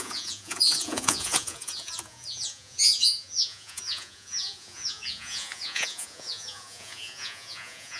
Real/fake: fake